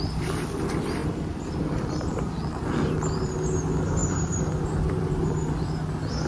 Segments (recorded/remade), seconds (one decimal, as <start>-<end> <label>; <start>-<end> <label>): 0.0-1.0 recorded; 1.0-2.3 remade; 2.3-4.0 recorded; 4.0-5.3 remade; 5.3-6.3 recorded